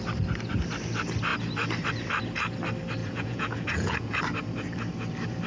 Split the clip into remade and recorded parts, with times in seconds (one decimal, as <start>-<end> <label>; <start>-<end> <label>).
0.0-3.0 recorded; 3.0-4.2 remade; 4.2-5.5 recorded